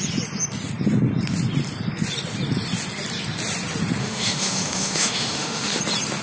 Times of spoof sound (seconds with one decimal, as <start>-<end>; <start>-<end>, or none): 4.0-5.8